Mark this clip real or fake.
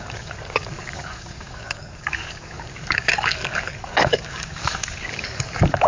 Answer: fake